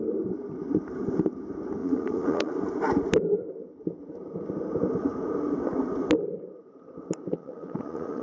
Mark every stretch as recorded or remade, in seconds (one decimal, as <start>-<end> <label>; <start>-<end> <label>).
0.0-1.8 recorded; 1.8-2.5 remade; 2.5-7.3 recorded; 7.3-8.2 remade